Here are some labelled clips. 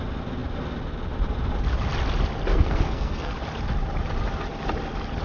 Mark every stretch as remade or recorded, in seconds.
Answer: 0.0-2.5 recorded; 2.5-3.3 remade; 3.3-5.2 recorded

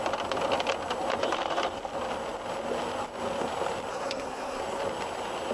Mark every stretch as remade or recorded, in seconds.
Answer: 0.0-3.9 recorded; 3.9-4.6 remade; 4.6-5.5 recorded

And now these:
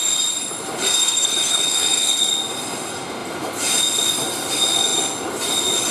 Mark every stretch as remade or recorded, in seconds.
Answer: 0.0-0.8 recorded; 0.8-2.3 remade; 2.3-5.9 recorded

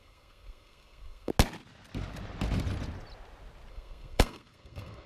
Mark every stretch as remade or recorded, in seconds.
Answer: 0.0-1.3 remade; 1.3-3.7 recorded; 3.7-5.1 remade